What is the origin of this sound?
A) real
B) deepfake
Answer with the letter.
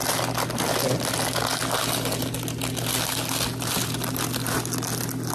A